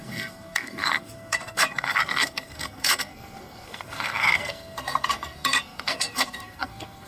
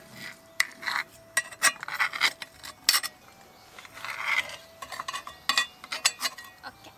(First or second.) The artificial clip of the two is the first